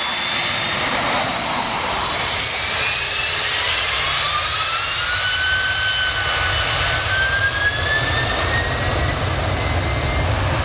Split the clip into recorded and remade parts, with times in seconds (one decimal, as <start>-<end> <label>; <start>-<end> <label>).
0.0-0.4 recorded; 0.4-4.6 remade; 4.6-8.9 recorded; 8.9-9.7 remade; 9.7-10.6 recorded